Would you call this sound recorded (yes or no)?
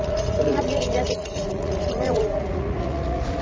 no